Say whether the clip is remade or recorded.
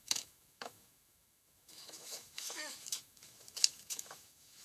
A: remade